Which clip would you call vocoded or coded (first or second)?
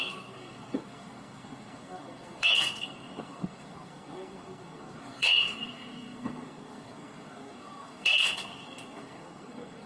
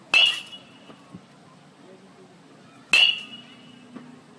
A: first